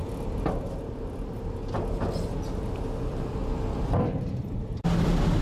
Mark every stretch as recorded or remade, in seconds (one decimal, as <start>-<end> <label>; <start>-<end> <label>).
0.0-2.6 recorded; 2.6-3.4 remade; 3.4-4.0 recorded; 4.0-5.4 remade